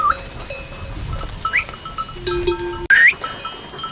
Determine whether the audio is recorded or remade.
recorded